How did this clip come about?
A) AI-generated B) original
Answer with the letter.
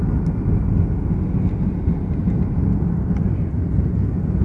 B